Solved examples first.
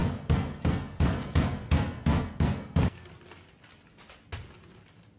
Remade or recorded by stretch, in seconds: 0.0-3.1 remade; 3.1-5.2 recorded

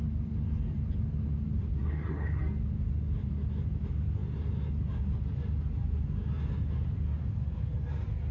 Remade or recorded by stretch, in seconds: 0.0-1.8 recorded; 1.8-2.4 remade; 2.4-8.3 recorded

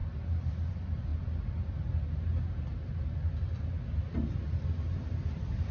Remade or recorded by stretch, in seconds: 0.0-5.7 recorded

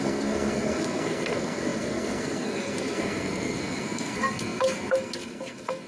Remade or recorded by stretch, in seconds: 0.0-5.9 remade

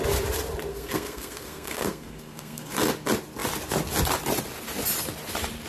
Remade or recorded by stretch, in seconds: 0.0-0.7 recorded; 0.7-2.7 remade; 2.7-5.7 recorded

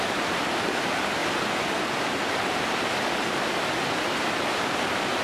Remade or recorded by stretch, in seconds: 0.0-5.2 recorded

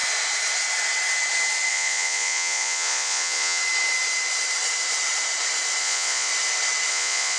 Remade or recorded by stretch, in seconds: 0.0-1.7 recorded; 1.7-3.6 remade; 3.6-5.8 recorded; 5.8-6.3 remade; 6.3-6.9 recorded; 6.9-7.4 remade